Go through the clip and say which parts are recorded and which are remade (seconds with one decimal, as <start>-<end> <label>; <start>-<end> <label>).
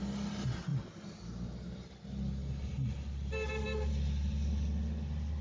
0.0-5.4 recorded